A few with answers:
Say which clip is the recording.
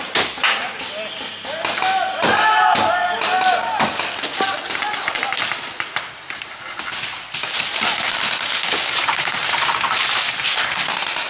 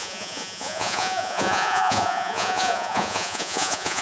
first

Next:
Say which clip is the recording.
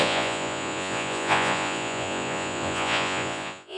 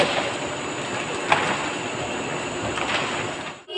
second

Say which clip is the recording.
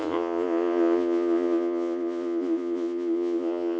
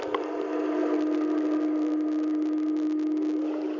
second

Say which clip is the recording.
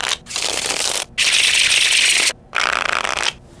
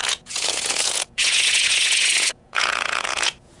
first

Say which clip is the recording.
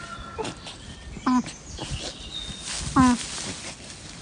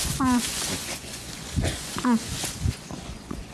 first